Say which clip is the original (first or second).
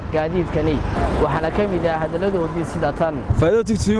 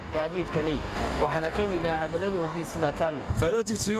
first